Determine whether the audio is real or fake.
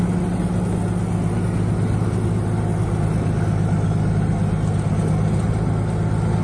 real